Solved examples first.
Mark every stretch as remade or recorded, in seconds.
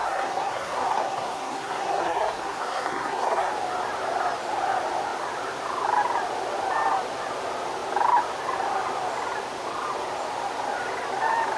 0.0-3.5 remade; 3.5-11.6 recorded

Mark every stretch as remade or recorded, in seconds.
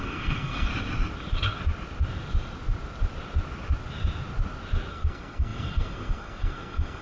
0.0-0.7 remade; 0.7-4.9 recorded; 4.9-7.0 remade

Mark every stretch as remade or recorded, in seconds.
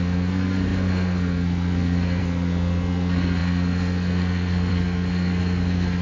0.0-6.0 remade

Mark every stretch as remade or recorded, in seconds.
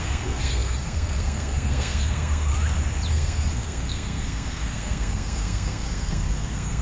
0.0-2.5 remade; 2.5-3.1 recorded; 3.1-6.8 remade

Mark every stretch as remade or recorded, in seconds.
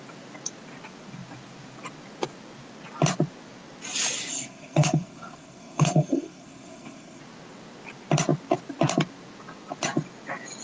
0.0-4.3 recorded; 4.3-7.2 remade; 7.2-10.6 recorded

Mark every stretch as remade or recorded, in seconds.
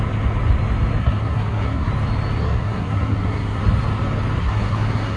0.0-1.0 recorded; 1.0-1.9 remade; 1.9-2.4 recorded; 2.4-3.6 remade; 3.6-4.4 recorded; 4.4-5.2 remade